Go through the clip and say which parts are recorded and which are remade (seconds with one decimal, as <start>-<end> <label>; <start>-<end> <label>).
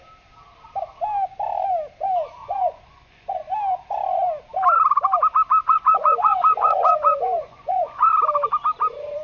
0.0-2.4 recorded; 2.4-3.4 remade; 3.4-5.6 recorded; 5.6-8.1 remade; 8.1-9.2 recorded